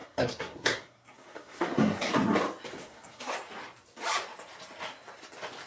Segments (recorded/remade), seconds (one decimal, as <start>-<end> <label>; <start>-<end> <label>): 0.0-2.1 remade; 2.1-2.8 recorded; 2.8-3.3 remade; 3.3-5.7 recorded

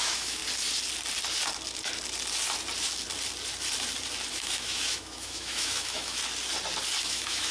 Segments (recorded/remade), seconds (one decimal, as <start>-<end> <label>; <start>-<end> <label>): 0.0-0.4 remade; 0.4-4.3 recorded; 4.3-6.2 remade; 6.2-7.0 recorded; 7.0-7.5 remade